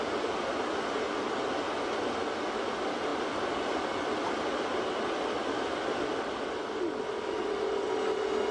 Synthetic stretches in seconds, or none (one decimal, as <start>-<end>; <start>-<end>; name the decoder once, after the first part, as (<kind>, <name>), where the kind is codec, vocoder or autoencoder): none